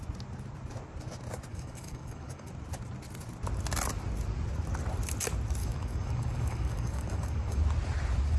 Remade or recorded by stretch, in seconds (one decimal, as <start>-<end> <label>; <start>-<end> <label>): 0.0-1.5 recorded; 1.5-2.5 remade; 2.5-5.6 recorded; 5.6-7.6 remade; 7.6-8.4 recorded